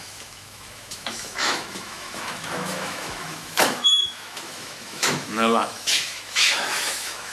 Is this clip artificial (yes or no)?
yes